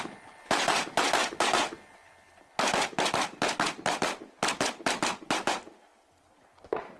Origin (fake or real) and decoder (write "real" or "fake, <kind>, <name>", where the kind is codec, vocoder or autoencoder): real